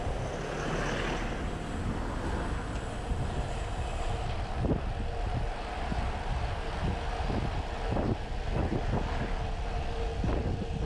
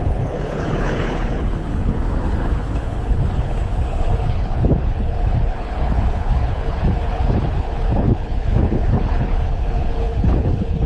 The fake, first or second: second